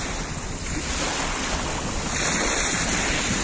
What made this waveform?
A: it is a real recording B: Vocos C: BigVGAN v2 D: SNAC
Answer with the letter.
A